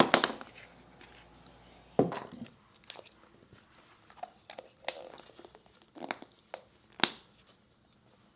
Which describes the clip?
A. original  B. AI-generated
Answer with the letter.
A